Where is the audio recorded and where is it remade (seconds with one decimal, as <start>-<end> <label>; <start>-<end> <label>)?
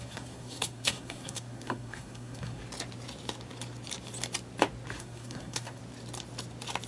0.0-2.6 remade; 2.6-5.0 recorded; 5.0-5.8 remade; 5.8-6.9 recorded